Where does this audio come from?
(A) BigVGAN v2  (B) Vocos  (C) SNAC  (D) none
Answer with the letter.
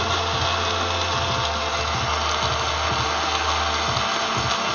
D